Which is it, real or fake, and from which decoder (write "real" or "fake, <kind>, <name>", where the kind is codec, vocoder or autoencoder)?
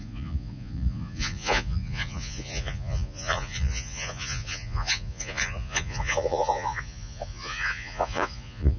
fake, vocoder, Vocos